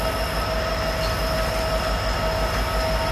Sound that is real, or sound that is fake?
real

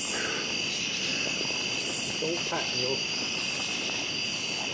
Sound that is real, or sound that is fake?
real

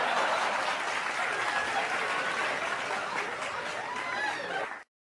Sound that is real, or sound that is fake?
real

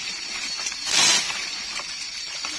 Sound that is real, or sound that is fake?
real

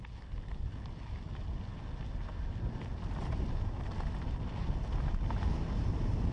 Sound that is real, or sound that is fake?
real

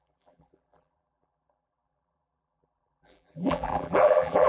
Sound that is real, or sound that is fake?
fake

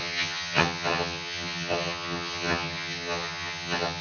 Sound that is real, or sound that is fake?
fake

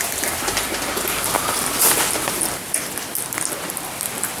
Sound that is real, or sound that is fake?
fake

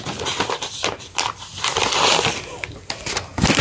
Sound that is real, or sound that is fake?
real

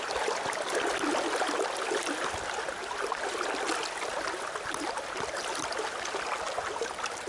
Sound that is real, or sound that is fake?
real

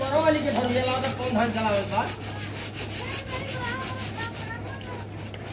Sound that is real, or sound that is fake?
real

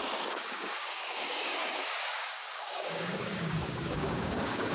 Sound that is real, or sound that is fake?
fake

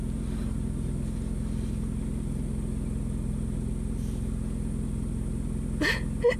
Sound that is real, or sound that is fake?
real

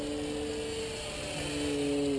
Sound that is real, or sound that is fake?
real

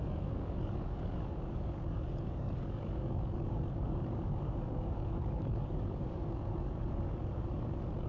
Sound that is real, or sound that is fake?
fake